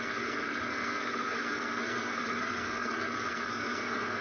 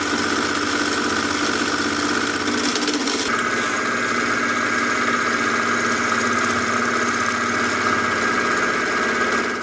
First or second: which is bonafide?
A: second